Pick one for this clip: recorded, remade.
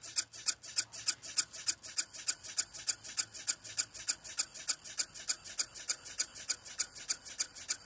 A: recorded